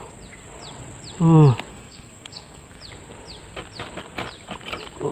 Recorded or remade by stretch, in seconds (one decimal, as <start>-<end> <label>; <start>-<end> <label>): 0.0-1.7 recorded; 1.7-2.8 remade; 2.8-5.1 recorded